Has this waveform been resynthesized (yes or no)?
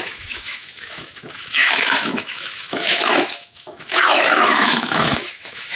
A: yes